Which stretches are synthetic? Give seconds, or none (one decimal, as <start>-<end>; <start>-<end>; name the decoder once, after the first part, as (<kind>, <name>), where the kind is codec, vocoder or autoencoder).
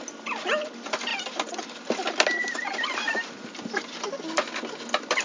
none